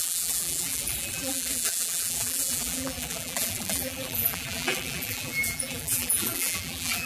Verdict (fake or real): fake